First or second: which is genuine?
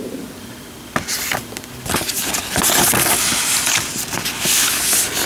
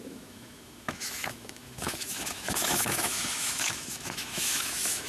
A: first